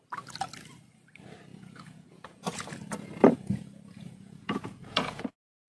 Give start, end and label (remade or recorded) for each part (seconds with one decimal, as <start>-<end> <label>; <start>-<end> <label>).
0.0-1.5 recorded; 1.5-2.7 remade; 2.7-3.4 recorded; 3.4-5.7 remade